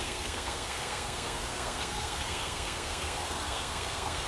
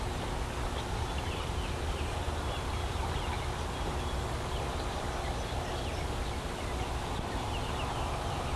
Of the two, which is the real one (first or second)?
second